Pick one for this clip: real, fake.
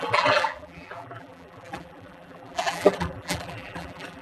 fake